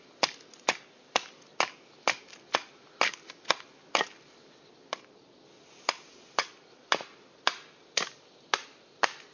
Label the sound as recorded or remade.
recorded